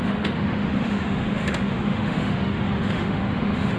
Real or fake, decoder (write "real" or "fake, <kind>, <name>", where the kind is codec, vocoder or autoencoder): fake, autoencoder, DAC-VAE